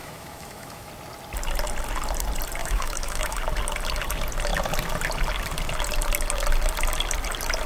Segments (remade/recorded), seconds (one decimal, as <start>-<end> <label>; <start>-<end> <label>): 0.0-0.9 remade; 0.9-2.6 recorded; 2.6-3.4 remade; 3.4-7.7 recorded